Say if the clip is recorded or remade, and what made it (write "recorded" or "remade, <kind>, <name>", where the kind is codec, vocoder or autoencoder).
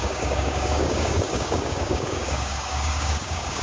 remade, codec, DAC